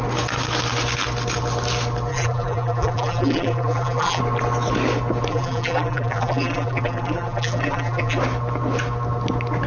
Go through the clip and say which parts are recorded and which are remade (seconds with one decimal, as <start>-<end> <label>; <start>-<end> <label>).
0.0-2.1 recorded; 2.1-4.2 remade; 4.2-5.3 recorded; 5.3-8.2 remade; 8.2-9.7 recorded